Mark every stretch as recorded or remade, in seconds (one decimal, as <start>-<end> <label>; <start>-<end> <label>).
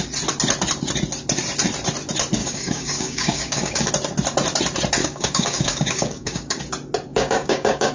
0.0-2.4 recorded; 2.4-3.9 remade; 3.9-5.0 recorded; 5.0-6.6 remade; 6.6-7.1 recorded; 7.1-7.9 remade